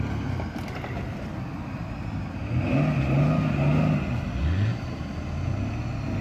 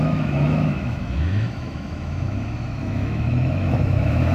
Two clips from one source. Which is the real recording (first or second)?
first